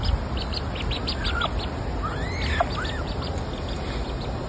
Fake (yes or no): no